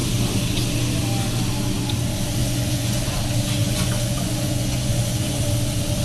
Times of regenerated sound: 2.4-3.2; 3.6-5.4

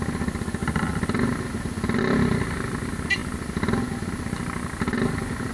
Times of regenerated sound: none

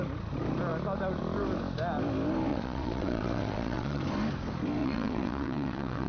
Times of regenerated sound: 2.5-4.0; 4.8-6.1